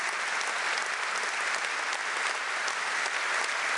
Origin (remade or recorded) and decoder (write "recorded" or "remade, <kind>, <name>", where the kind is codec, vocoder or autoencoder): recorded